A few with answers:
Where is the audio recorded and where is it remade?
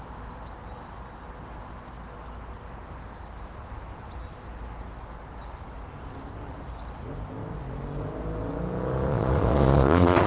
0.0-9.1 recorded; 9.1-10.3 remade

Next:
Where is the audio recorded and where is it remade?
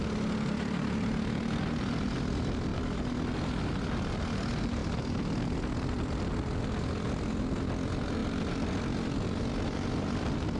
0.0-10.6 recorded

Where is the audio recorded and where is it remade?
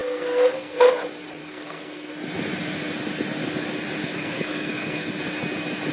0.0-0.9 remade; 0.9-1.4 recorded; 1.4-2.1 remade; 2.1-4.0 recorded; 4.0-5.2 remade; 5.2-5.9 recorded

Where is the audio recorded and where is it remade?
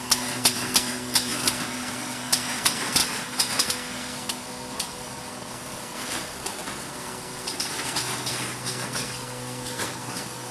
0.0-10.5 remade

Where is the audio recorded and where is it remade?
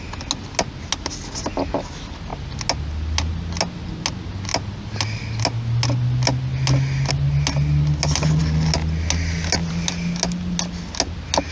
0.0-11.5 recorded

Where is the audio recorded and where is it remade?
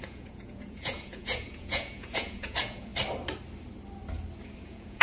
0.0-2.9 remade; 2.9-4.6 recorded; 4.6-5.0 remade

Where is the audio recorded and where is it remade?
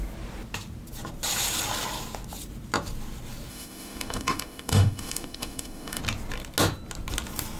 0.0-3.5 recorded; 3.5-6.0 remade; 6.0-7.6 recorded